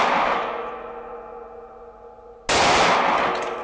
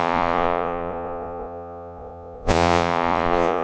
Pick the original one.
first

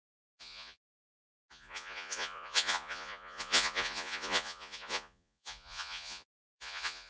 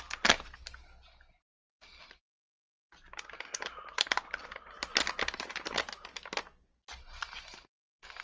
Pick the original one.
second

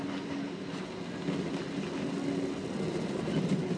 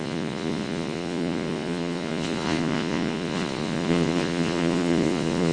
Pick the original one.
first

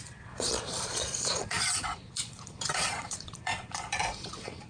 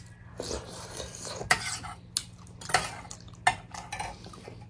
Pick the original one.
second